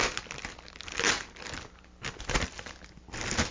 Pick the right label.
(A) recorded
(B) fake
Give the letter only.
A